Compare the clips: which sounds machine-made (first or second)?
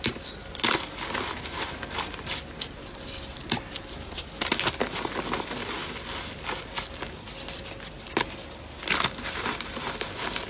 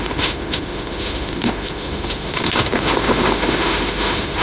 second